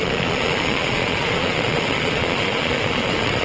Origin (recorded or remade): remade